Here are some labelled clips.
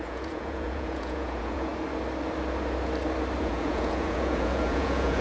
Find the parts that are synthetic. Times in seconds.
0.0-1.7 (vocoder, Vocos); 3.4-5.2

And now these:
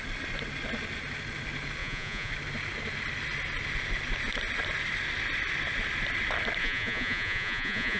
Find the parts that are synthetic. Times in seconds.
1.8-2.3 (vocoder, Vocos); 6.6-8.0

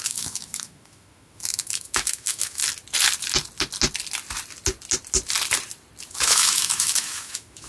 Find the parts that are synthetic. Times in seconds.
0.0-2.6 (autoencoder, DAC-VAE); 6.1-7.7

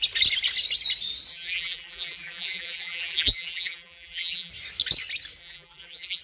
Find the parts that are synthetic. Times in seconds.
1.3-4.5 (vocoder, BigVGAN v2); 5.4-6.2

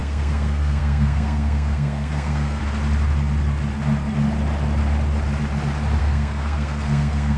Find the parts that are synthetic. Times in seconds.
0.0-2.6 (codec, SNAC); 6.0-7.4

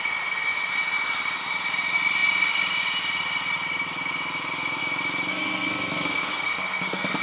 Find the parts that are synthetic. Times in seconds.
5.3-7.2 (codec, SNAC)

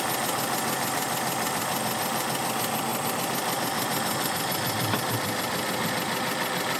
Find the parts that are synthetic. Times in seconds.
2.9-5.9 (vocoder, BigVGAN v2)